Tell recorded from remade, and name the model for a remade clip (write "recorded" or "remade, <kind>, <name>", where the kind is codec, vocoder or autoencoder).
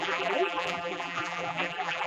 remade, vocoder, BigVGAN v2